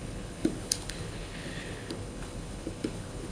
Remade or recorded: remade